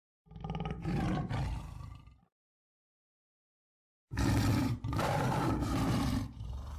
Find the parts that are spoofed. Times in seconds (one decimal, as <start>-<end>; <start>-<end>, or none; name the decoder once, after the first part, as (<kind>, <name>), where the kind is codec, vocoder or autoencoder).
0.0-1.1 (vocoder, BigVGAN v2); 2.2-3.5; 4.6-6.8